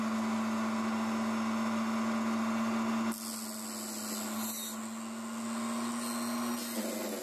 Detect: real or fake real